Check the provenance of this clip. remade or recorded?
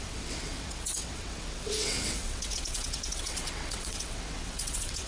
remade